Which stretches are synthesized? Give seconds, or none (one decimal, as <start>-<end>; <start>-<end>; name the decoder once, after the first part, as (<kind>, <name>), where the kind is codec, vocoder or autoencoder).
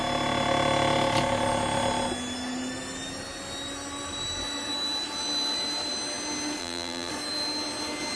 6.6-7.1 (vocoder, BigVGAN v2)